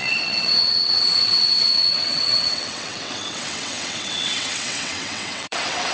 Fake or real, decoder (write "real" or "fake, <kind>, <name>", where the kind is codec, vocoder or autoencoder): fake, vocoder, WaveNeXt